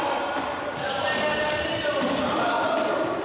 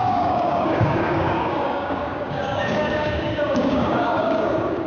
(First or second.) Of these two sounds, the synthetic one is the second